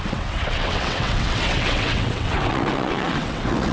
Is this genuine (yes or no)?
no